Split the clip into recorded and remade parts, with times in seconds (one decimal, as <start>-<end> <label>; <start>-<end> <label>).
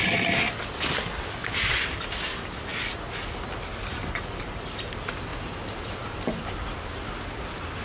0.0-7.8 recorded